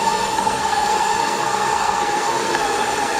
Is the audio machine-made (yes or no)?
yes